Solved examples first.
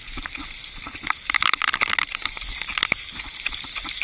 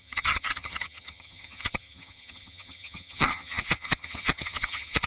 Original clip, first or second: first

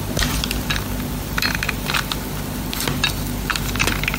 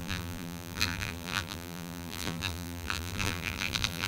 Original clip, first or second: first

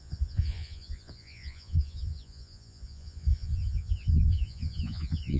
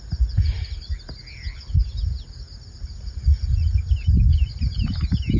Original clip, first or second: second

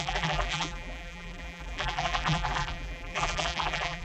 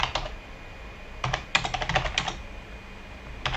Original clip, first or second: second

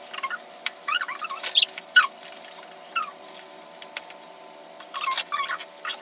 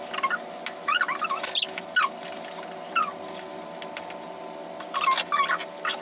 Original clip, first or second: second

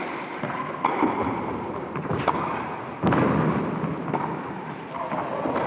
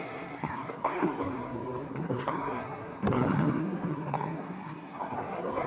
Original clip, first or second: first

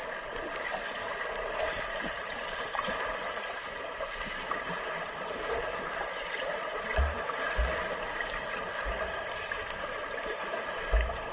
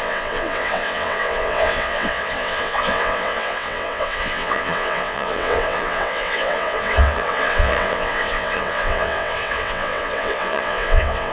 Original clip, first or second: first